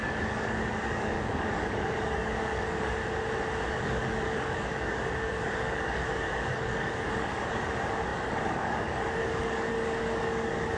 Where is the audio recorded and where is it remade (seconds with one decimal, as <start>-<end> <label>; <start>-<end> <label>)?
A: 0.0-3.0 remade; 3.0-3.7 recorded; 3.7-10.8 remade